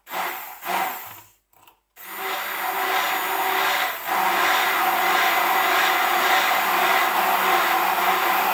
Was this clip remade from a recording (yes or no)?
no